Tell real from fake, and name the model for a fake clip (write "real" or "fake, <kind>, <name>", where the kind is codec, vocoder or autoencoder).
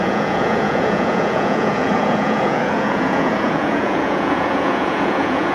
fake, vocoder, Vocos